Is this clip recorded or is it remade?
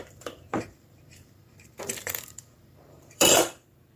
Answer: remade